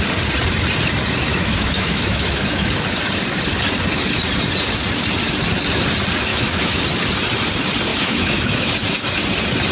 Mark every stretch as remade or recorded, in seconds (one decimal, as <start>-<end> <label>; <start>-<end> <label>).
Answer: 0.0-1.3 recorded; 1.3-2.7 remade; 2.7-6.3 recorded; 6.3-6.8 remade; 6.8-7.9 recorded; 7.9-8.7 remade; 8.7-9.7 recorded